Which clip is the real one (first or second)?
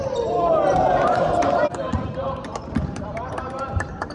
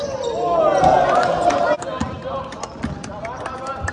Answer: second